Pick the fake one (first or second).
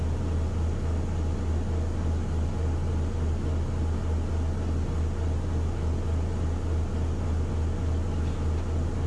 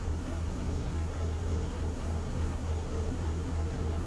second